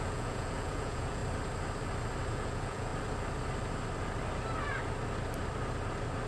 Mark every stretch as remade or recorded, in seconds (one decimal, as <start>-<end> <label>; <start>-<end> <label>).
0.0-1.2 remade; 1.2-2.3 recorded; 2.3-2.9 remade; 2.9-6.3 recorded